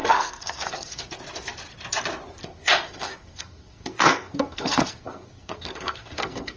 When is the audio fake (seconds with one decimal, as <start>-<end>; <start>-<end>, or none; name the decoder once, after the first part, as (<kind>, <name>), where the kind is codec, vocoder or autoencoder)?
0.0-1.1 (codec, SNAC); 2.4-6.6